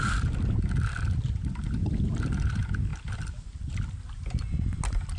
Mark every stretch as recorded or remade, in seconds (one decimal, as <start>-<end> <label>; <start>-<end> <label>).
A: 0.0-5.2 recorded